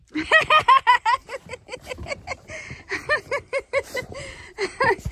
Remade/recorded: remade